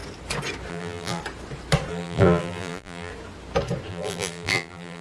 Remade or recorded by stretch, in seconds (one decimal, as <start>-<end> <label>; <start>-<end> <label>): 0.0-0.7 recorded; 0.7-1.2 remade; 1.2-1.9 recorded; 1.9-3.1 remade; 3.1-3.9 recorded; 3.9-5.0 remade